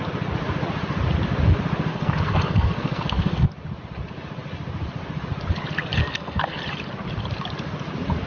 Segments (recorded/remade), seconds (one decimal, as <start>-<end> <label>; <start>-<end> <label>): 0.0-1.9 recorded; 1.9-3.5 remade; 3.5-6.0 recorded; 6.0-6.6 remade; 6.6-8.3 recorded